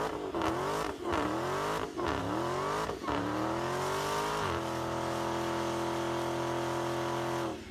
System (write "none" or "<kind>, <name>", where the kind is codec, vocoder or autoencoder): none